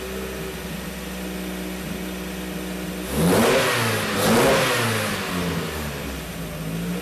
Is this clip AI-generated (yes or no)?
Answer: no